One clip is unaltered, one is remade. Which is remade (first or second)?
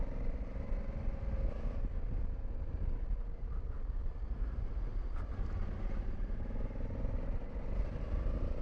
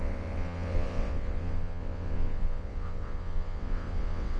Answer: second